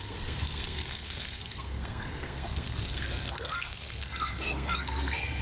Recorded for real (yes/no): no